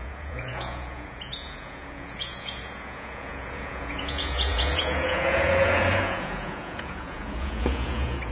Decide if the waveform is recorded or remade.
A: remade